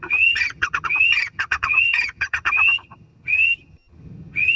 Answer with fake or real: fake